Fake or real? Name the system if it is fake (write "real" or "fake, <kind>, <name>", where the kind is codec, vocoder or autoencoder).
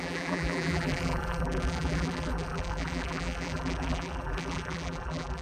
fake, vocoder, BigVGAN v2